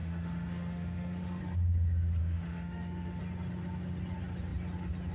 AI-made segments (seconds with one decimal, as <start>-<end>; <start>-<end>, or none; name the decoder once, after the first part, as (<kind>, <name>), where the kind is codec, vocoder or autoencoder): 0.0-1.4 (autoencoder, DAC-VAE); 2.2-3.2

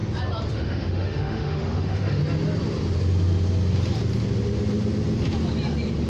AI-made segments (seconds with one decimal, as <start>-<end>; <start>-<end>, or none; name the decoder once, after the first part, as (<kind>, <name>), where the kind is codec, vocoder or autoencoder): 0.5-2.2 (autoencoder, DAC-VAE)

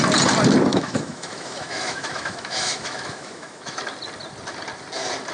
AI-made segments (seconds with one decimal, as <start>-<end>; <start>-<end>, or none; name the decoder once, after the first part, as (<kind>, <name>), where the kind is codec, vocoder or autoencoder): 0.7-3.8 (autoencoder, DAC-VAE)

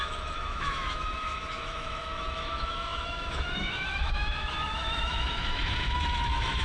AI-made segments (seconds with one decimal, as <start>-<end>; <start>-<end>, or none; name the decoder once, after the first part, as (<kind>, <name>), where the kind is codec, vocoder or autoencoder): 0.0-6.6 (autoencoder, DAC-VAE)

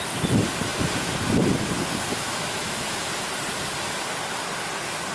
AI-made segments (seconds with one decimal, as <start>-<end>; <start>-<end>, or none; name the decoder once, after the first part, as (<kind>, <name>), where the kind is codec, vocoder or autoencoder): 2.1-3.0 (autoencoder, DAC-VAE)

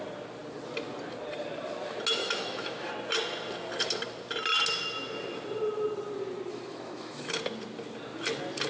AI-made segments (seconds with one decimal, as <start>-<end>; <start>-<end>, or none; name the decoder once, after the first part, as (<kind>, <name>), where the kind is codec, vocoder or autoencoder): 2.2-2.9 (autoencoder, DAC-VAE); 6.5-7.4

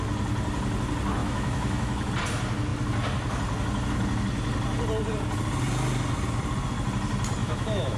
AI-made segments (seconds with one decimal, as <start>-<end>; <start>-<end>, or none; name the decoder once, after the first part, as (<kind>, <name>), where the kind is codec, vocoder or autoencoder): 1.2-2.1 (autoencoder, DAC-VAE); 7.4-8.0